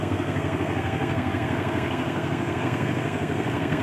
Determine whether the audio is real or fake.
fake